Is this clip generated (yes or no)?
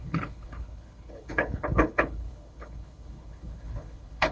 yes